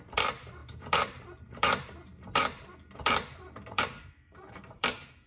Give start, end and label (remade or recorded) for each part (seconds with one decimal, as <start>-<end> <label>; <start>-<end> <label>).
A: 0.0-5.3 remade